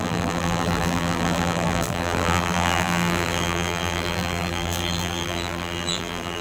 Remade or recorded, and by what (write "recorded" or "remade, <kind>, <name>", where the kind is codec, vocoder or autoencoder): remade, vocoder, BigVGAN v2